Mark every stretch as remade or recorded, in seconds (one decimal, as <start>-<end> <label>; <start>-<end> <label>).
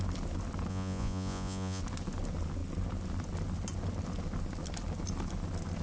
0.0-0.7 recorded; 0.7-1.8 remade; 1.8-5.8 recorded